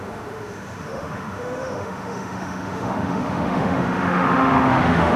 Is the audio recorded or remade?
remade